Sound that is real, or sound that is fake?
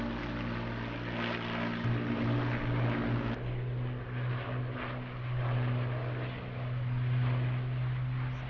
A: real